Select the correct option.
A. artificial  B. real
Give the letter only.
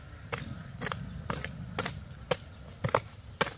B